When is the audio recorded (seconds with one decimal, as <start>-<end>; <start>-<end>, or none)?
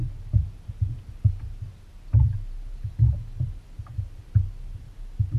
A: 0.0-5.4